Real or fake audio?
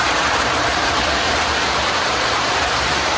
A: fake